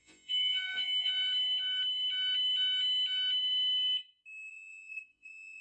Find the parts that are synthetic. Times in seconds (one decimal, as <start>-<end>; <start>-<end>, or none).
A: 0.0-1.1; 4.5-5.6